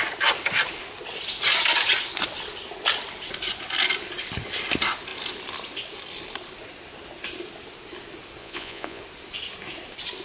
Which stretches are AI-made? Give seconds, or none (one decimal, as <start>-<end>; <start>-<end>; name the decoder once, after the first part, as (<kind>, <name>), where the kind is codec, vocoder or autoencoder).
8.4-9.0 (vocoder, Vocos)

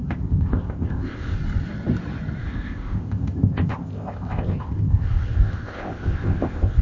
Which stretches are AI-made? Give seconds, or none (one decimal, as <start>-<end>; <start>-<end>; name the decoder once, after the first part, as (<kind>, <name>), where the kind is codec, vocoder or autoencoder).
0.0-1.4 (codec, ZipCodec); 2.4-6.8

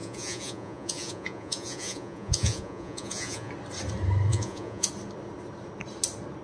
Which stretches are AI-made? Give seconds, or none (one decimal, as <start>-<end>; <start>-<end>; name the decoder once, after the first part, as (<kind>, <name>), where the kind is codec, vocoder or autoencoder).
0.0-3.5 (vocoder, Vocos); 4.3-4.9